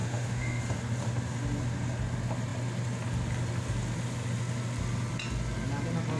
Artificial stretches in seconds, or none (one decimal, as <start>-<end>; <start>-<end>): 0.0-0.6